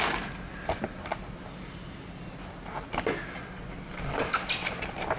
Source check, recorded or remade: recorded